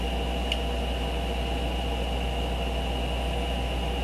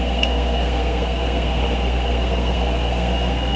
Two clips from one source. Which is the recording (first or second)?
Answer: first